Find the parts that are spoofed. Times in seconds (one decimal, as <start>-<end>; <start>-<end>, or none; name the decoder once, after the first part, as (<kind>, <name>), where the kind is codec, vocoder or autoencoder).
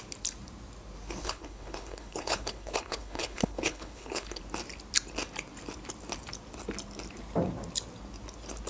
1.2-4.4 (codec, HILCodec)